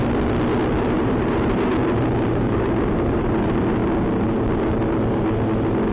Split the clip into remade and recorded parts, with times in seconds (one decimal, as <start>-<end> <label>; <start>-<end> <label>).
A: 0.0-0.8 recorded; 0.8-1.7 remade; 1.7-2.3 recorded; 2.3-3.8 remade; 3.8-5.9 recorded